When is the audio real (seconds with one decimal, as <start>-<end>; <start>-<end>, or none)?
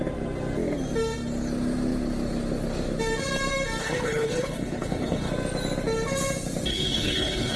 0.0-3.8; 5.3-6.7